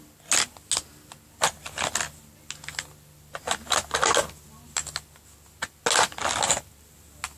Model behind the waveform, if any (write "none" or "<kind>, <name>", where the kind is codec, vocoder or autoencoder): none